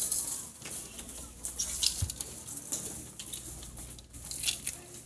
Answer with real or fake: real